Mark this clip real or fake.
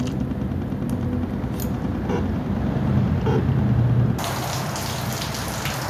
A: real